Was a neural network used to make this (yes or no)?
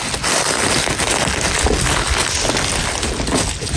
no